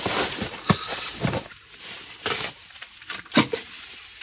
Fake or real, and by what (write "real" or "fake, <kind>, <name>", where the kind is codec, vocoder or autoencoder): fake, vocoder, BigVGAN v2